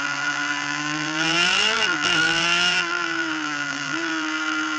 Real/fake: fake